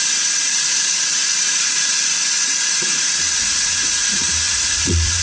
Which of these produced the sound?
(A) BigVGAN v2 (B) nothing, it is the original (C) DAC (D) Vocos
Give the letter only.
D